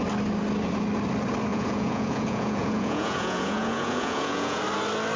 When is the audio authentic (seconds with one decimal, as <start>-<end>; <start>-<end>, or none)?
0.0-1.5; 4.6-5.2